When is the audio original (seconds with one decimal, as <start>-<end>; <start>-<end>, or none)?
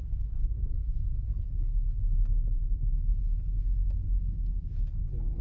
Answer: 0.0-5.4